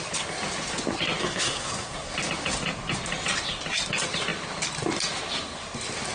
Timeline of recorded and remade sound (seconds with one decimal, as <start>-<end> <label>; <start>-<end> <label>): 0.0-1.2 recorded; 1.2-2.1 remade; 2.1-6.1 recorded